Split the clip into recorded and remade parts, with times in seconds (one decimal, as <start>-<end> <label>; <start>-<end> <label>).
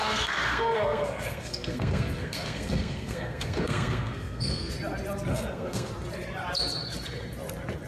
0.0-4.7 remade; 4.7-5.3 recorded; 5.3-5.9 remade; 5.9-7.9 recorded